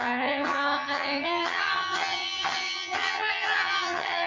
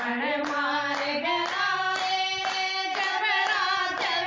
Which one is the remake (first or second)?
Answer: first